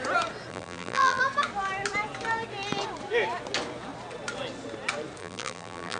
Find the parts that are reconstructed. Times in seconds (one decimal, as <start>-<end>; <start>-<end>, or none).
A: 0.5-1.2; 5.2-6.0